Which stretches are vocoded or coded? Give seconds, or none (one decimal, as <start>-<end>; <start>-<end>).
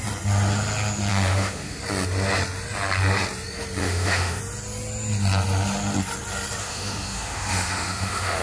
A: 1.1-1.8; 3.8-4.4; 6.6-8.4